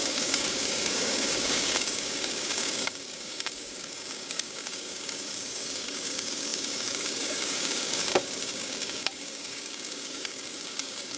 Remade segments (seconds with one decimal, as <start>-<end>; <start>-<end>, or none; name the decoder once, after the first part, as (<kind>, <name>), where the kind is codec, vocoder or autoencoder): 0.0-11.2 (codec, DAC)